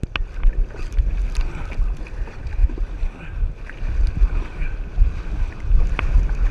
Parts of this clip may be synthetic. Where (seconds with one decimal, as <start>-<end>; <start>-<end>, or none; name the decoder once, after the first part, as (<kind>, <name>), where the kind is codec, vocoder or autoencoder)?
none